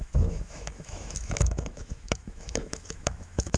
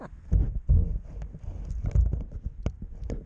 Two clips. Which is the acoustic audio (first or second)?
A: second